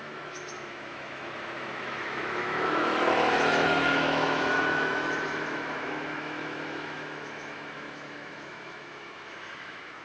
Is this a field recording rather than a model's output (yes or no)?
no